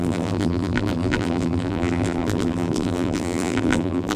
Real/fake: fake